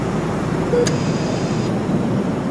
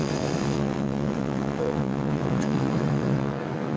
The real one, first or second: first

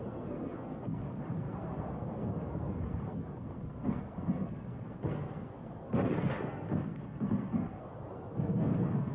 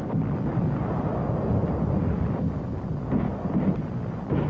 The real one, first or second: second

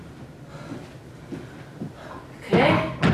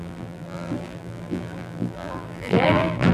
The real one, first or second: first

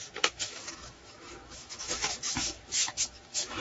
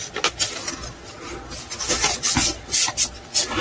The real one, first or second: second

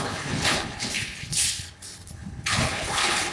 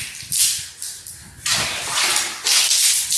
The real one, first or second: second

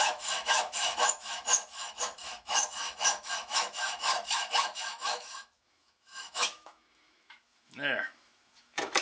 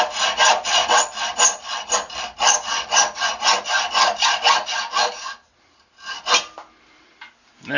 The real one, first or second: second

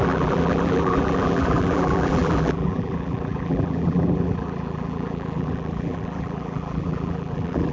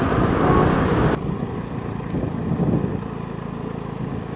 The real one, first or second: second